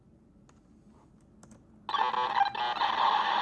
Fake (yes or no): no